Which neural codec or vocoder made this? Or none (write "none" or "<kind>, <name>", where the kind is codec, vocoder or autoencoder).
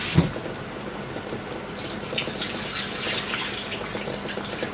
none